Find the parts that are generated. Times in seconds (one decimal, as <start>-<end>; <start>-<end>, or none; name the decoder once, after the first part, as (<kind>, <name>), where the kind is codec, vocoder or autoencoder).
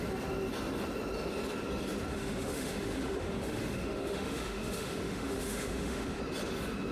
2.1-6.2 (autoencoder, DAC-VAE)